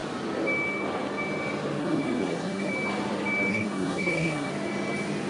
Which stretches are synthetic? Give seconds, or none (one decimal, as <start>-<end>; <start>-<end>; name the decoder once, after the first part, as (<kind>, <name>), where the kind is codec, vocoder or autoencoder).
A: 1.8-2.7 (codec, SNAC); 3.5-4.5